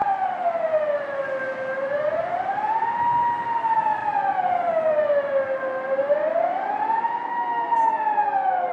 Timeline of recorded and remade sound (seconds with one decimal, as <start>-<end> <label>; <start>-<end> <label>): 0.0-8.7 recorded